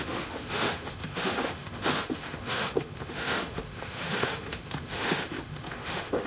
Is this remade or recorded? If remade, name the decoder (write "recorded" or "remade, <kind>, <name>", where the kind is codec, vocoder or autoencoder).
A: remade, autoencoder, DAC-VAE